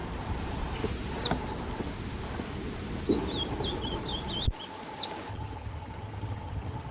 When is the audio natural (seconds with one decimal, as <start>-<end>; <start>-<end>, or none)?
0.0-5.3